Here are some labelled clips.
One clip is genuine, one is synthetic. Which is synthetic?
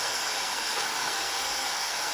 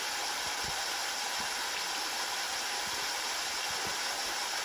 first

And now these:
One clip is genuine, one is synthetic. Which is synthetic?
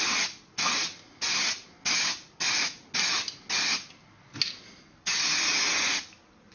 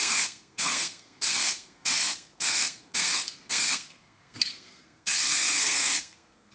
second